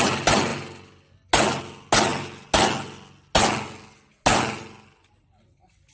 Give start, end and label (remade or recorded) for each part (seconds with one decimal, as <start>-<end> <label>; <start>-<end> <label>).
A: 0.0-5.9 recorded